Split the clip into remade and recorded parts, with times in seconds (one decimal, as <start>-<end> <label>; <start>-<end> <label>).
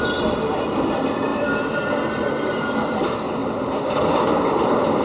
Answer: 0.0-5.0 remade